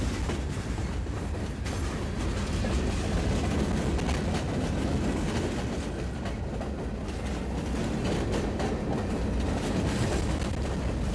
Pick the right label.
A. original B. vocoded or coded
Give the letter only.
A